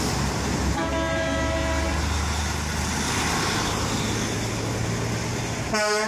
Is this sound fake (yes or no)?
no